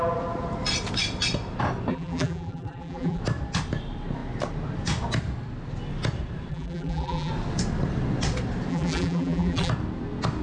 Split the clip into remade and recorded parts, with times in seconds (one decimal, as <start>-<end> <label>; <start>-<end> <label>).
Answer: 0.0-1.9 recorded; 1.9-3.2 remade; 3.2-6.5 recorded; 6.5-7.3 remade; 7.3-8.7 recorded; 8.7-9.7 remade; 9.7-10.4 recorded